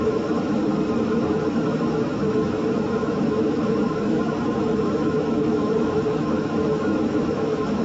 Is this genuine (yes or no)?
no